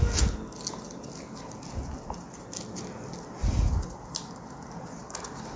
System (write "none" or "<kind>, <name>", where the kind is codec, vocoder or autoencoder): none